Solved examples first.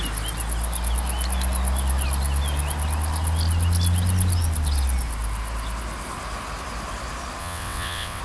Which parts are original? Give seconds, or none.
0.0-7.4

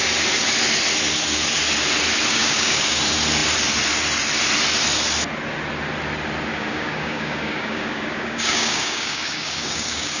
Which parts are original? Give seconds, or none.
0.0-2.3; 3.0-6.5

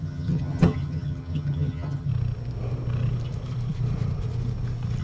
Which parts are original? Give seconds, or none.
2.1-5.0

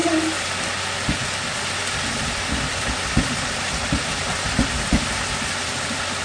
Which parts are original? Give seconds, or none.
0.0-6.2

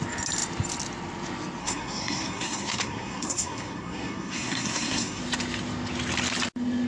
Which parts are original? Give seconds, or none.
0.0-1.6; 5.2-6.9